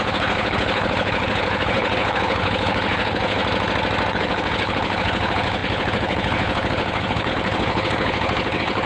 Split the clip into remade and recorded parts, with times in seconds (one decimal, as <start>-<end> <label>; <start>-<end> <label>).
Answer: 0.0-3.4 remade; 3.4-4.1 recorded; 4.1-8.9 remade